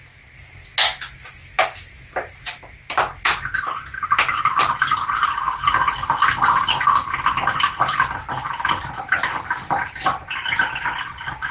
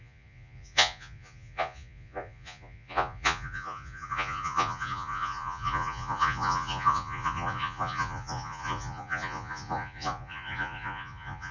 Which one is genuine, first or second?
first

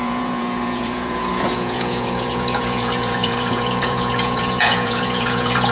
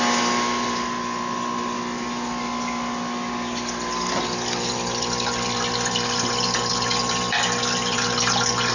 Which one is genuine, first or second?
second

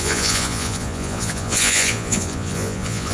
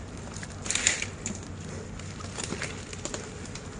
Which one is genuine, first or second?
second